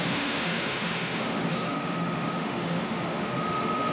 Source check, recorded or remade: remade